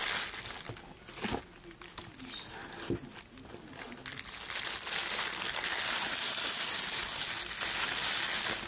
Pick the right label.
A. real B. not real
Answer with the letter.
A